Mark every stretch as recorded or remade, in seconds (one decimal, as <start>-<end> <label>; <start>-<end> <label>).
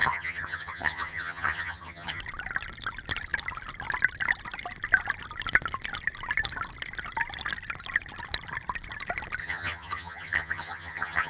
0.0-2.2 remade; 2.2-9.4 recorded; 9.4-11.3 remade